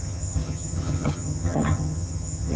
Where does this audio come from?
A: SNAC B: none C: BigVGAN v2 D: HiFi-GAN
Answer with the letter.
D